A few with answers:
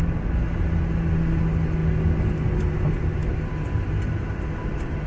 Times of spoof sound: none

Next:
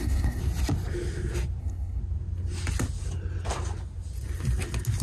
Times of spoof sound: 0.0-0.4 (codec, SNAC); 1.6-2.0

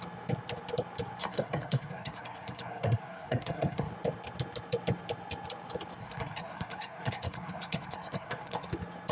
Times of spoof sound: 1.2-3.9 (codec, SNAC); 6.0-8.7